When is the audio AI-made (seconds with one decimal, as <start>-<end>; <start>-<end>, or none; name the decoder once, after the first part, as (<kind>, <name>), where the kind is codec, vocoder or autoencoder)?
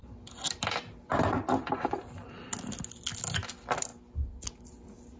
none